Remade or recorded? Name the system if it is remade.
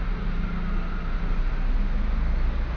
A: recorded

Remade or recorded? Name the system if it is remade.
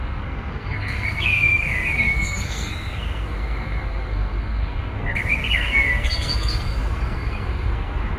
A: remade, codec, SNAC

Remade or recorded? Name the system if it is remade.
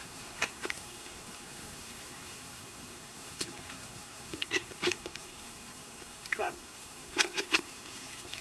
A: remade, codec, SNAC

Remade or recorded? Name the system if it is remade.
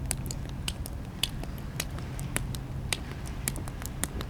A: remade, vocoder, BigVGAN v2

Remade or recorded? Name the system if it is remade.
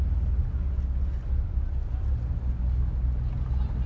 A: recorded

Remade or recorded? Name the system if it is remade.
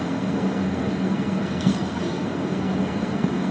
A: remade, codec, SNAC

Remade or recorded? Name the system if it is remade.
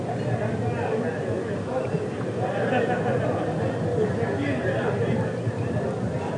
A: recorded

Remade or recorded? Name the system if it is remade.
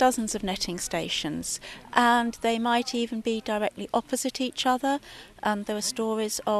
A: recorded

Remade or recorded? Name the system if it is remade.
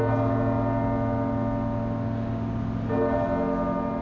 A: recorded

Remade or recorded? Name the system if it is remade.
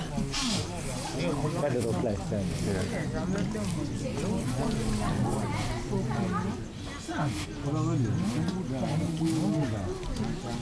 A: recorded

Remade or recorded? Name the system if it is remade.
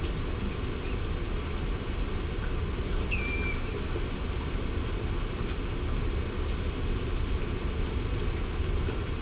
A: recorded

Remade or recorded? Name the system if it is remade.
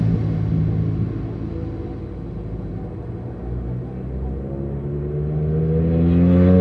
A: recorded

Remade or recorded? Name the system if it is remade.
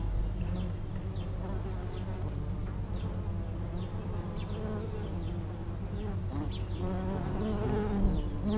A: recorded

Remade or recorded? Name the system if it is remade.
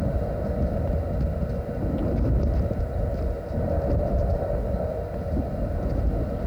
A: recorded